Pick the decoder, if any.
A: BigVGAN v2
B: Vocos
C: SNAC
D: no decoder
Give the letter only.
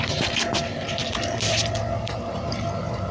D